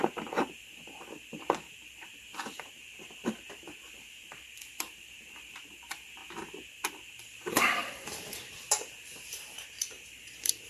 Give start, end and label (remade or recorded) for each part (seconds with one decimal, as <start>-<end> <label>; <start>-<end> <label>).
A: 0.0-6.2 remade; 6.2-6.9 recorded; 6.9-10.7 remade